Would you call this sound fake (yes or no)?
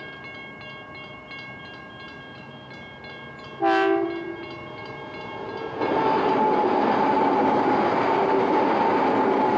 no